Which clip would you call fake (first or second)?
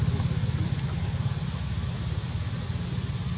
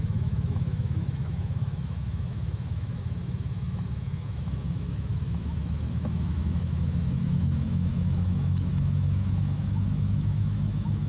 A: second